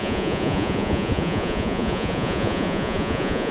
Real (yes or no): no